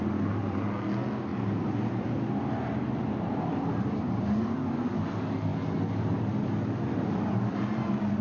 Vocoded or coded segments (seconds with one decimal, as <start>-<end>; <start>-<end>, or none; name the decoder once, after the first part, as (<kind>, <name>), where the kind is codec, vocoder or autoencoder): none